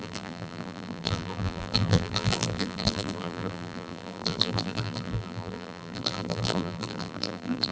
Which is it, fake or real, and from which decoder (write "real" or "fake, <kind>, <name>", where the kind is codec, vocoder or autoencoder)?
fake, vocoder, BigVGAN v2